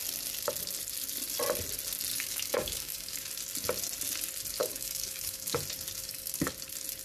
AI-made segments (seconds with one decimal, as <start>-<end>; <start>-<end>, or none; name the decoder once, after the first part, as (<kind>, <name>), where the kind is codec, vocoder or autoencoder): 2.1-3.3 (codec, DAC); 4.6-5.6; 6.0-6.5